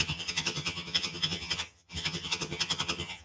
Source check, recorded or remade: remade